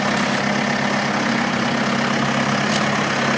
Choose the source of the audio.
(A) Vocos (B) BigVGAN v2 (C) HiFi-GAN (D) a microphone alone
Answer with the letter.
D